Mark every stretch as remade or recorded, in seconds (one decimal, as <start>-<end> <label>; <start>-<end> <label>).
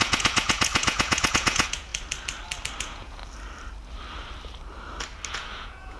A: 0.0-1.9 remade; 1.9-2.8 recorded; 2.8-3.2 remade; 3.2-5.3 recorded; 5.3-6.0 remade